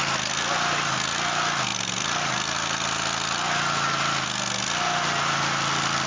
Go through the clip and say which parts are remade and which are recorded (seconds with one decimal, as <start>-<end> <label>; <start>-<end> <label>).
0.0-6.1 recorded